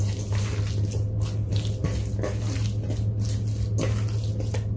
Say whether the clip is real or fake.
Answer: real